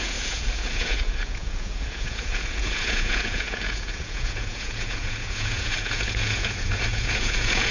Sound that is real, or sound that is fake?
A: fake